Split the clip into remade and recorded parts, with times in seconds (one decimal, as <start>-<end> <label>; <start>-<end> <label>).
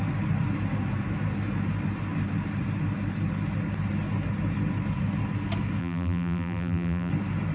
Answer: 0.0-5.8 recorded; 5.8-7.1 remade; 7.1-7.5 recorded